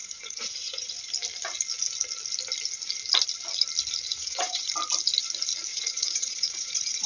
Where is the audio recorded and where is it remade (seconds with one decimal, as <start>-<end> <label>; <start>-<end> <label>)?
0.0-0.9 remade; 0.9-4.1 recorded; 4.1-4.7 remade; 4.7-5.7 recorded; 5.7-7.1 remade